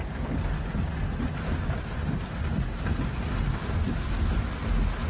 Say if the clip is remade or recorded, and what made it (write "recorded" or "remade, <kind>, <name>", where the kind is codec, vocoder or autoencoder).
recorded